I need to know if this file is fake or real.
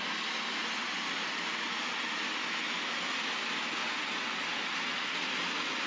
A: real